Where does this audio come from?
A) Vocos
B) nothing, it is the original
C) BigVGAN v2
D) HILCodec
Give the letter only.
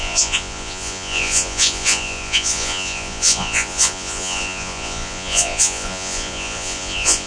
A